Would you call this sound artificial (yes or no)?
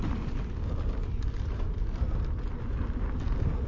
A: no